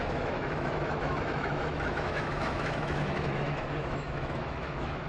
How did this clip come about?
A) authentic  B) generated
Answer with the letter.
B